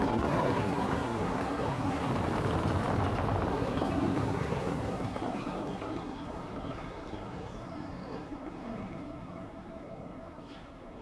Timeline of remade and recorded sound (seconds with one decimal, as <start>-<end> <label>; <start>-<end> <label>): 0.0-2.1 remade; 2.1-3.5 recorded; 3.5-11.0 remade